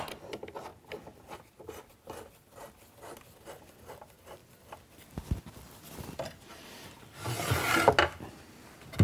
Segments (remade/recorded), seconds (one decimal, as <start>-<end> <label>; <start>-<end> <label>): 0.0-4.4 recorded; 4.4-7.5 remade; 7.5-9.0 recorded